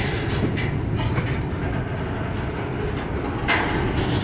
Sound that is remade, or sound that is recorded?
recorded